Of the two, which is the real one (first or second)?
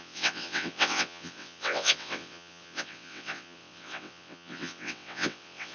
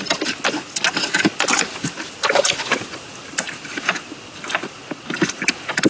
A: second